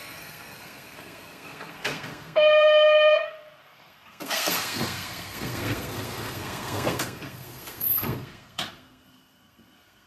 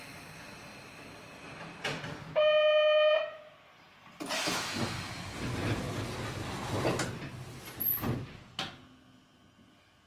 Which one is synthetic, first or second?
first